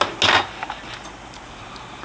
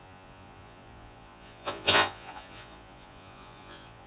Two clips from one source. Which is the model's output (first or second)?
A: second